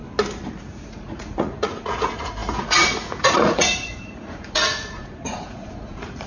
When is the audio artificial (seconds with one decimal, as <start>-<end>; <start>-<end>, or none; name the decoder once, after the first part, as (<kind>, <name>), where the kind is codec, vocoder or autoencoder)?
0.7-6.3 (vocoder, Vocos)